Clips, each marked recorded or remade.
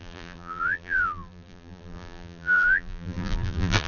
remade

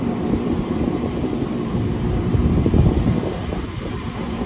remade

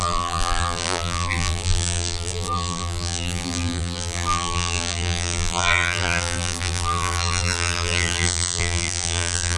remade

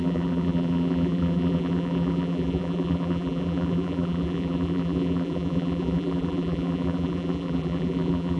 remade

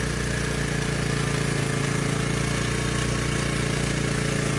recorded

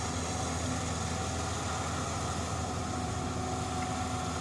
recorded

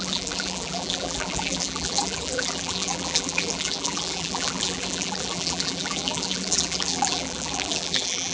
remade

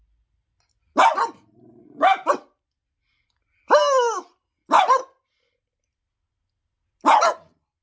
recorded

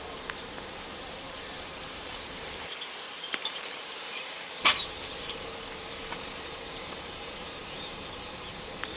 remade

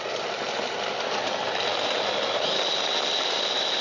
recorded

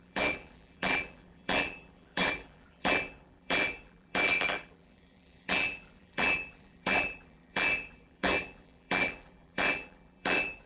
remade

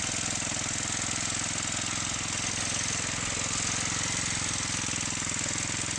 recorded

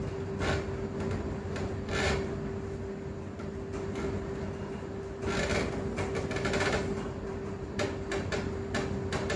recorded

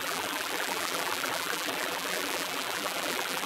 remade